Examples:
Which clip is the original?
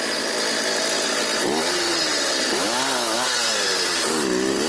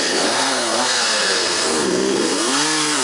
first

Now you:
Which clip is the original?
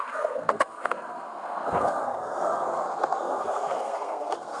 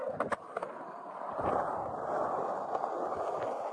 second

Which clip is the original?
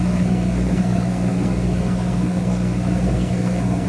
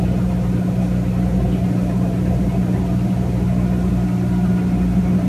second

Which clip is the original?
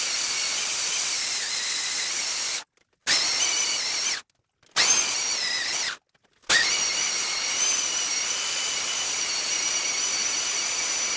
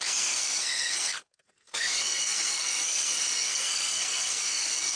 first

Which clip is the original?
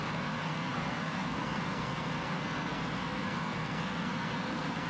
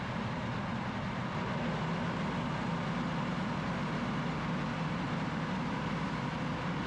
second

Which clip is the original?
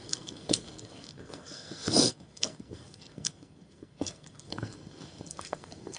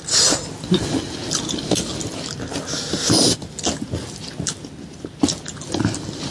second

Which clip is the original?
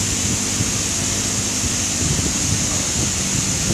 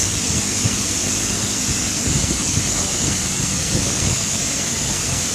first